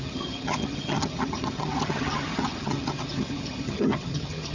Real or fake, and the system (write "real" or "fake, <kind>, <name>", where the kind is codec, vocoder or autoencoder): fake, vocoder, HiFi-GAN